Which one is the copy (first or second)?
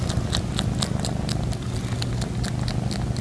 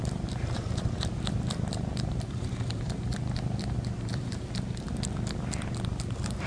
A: second